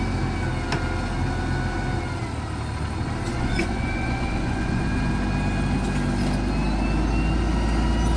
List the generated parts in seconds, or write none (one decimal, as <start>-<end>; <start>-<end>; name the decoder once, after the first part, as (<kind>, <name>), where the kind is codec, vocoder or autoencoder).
3.3-5.1 (vocoder, Vocos)